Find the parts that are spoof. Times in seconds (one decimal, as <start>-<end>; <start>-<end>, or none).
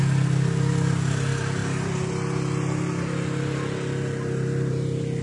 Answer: none